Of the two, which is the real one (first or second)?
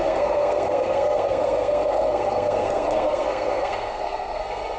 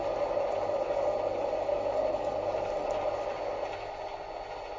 second